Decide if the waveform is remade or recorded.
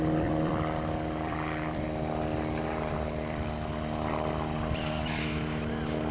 remade